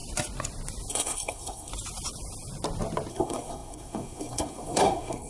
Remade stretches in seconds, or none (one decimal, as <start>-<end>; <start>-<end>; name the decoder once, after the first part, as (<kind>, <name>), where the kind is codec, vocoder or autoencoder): 0.9-1.7 (codec, SNAC); 3.1-5.3